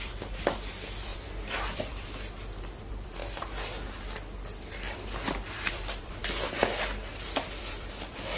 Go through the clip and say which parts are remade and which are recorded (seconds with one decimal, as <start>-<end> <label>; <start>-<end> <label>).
0.0-3.2 remade; 3.2-5.7 recorded; 5.7-6.2 remade; 6.2-7.6 recorded; 7.6-8.4 remade